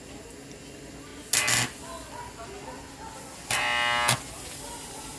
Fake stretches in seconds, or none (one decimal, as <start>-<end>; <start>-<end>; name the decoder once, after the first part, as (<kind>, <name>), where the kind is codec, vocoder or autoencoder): none